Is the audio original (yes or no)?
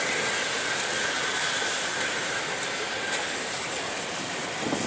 yes